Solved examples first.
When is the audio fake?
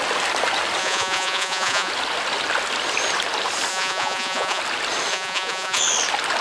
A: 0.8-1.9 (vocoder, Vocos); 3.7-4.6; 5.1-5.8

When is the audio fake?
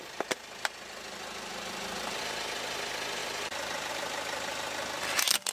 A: none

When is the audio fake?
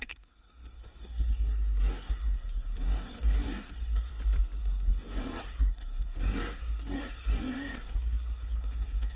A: 0.0-4.1 (codec, SNAC); 4.6-9.2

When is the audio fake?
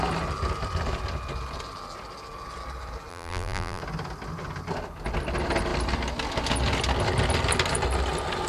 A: 3.1-3.8 (vocoder, BigVGAN v2)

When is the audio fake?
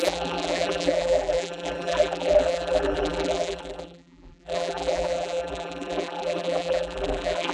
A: 0.0-7.5 (vocoder, BigVGAN v2)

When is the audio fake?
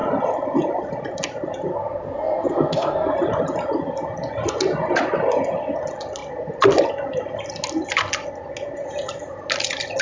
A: 1.7-3.1 (codec, SNAC)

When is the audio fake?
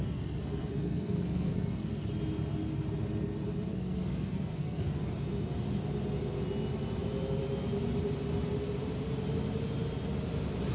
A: 0.0-2.1 (codec, SNAC); 3.7-5.0